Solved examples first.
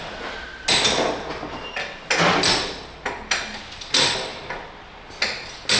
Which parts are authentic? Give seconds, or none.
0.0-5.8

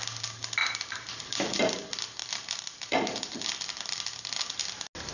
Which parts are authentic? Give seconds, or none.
0.0-0.6; 1.1-2.2; 3.4-5.1